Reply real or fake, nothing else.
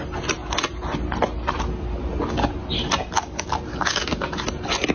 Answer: real